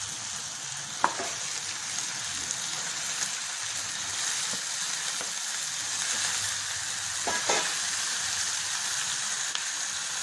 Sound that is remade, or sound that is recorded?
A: recorded